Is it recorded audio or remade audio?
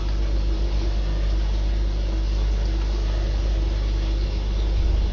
recorded